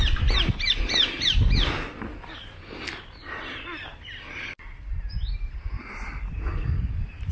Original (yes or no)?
yes